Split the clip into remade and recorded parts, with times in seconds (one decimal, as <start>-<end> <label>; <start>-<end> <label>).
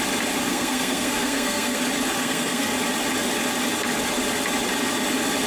0.0-0.5 recorded; 0.5-1.8 remade; 1.8-2.2 recorded; 2.2-2.7 remade; 2.7-5.5 recorded